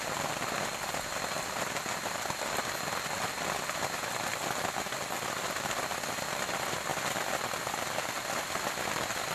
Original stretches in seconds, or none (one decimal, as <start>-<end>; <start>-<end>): 0.0-9.3